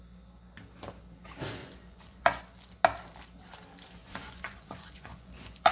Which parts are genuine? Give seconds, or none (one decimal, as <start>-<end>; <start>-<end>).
0.0-1.6; 2.4-4.0

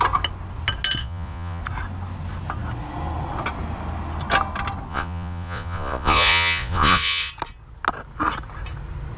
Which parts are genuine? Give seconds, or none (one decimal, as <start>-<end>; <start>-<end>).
0.0-1.0; 1.6-4.9; 7.3-9.2

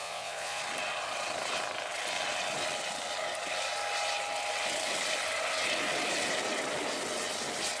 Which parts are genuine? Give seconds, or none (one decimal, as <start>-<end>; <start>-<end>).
0.6-7.8